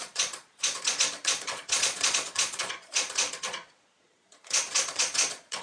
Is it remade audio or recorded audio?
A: remade